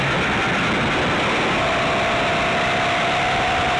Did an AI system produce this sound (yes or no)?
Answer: no